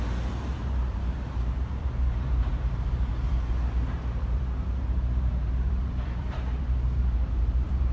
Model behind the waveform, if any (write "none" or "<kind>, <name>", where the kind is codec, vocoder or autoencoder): vocoder, BigVGAN v2